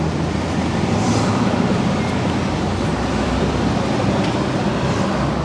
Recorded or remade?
remade